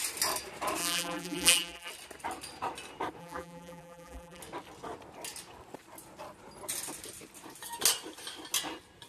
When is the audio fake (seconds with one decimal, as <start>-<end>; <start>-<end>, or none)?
0.8-1.9; 3.2-4.4